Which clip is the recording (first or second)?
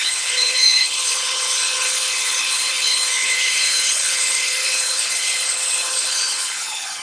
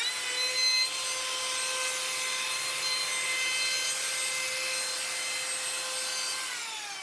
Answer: second